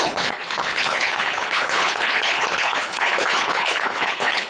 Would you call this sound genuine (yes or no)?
no